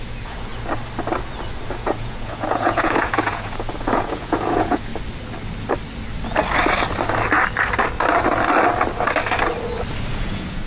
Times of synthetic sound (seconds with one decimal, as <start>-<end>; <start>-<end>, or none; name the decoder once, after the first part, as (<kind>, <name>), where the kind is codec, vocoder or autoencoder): 0.0-0.5 (vocoder, Vocos); 1.7-4.9; 10.1-10.7